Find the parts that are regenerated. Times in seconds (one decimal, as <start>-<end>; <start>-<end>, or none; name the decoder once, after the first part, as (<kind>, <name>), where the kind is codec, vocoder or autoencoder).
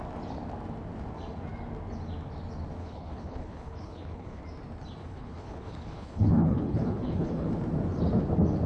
2.8-4.4 (codec, HILCodec); 5.0-7.5